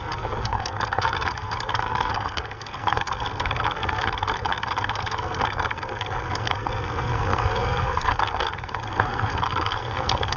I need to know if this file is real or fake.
fake